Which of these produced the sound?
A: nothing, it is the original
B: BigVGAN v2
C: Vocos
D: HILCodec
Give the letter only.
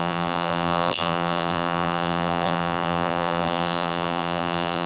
B